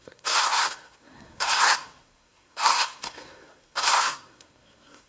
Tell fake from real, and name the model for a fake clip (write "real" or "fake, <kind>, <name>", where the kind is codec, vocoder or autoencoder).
fake, codec, SNAC